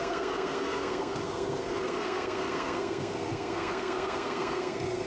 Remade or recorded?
remade